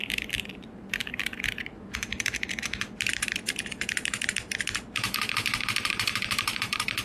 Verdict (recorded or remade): remade